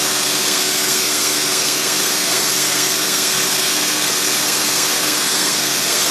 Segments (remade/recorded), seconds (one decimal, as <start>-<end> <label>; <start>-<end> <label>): 0.0-6.1 remade